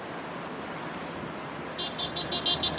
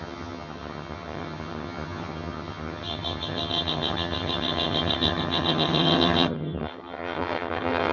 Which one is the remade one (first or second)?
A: second